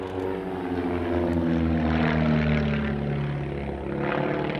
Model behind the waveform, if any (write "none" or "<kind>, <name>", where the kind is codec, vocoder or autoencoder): none